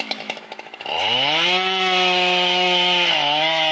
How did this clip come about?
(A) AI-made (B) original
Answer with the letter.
A